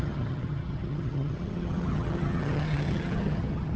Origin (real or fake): fake